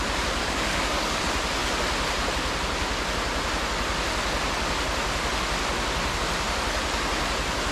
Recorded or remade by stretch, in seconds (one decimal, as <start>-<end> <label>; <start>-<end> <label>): 0.0-0.4 recorded; 0.4-1.2 remade; 1.2-7.7 recorded